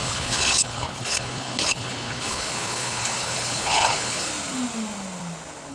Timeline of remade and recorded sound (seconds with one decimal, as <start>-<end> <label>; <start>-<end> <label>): 0.0-4.3 remade; 4.3-5.7 recorded